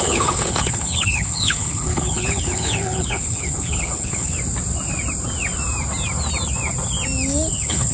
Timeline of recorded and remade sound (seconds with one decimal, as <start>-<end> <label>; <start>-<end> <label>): 0.0-4.3 remade; 4.3-7.5 recorded; 7.5-7.9 remade